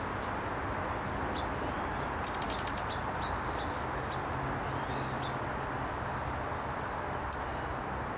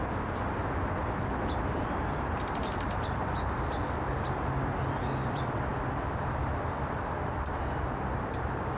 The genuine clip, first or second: first